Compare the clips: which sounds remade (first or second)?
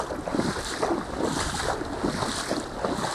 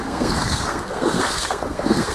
second